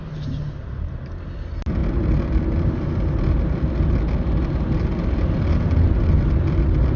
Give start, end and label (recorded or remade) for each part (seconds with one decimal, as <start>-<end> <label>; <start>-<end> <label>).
0.0-7.0 recorded